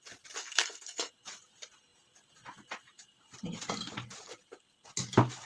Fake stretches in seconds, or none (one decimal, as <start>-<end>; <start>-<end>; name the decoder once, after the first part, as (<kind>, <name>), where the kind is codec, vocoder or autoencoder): 0.4-1.1 (codec, SNAC)